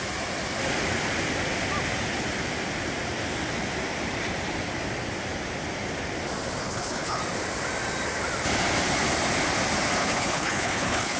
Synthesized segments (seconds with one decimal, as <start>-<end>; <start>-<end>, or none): 6.6-7.2; 10.0-11.2